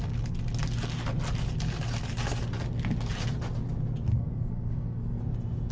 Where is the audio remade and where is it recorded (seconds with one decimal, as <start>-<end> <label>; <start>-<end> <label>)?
0.0-4.1 recorded; 4.1-5.2 remade; 5.2-5.7 recorded